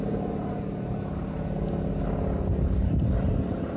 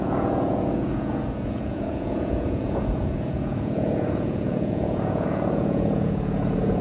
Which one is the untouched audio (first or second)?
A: first